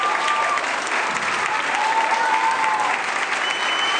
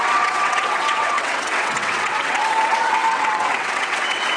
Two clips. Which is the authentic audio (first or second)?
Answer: first